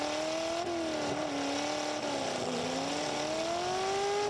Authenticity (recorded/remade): recorded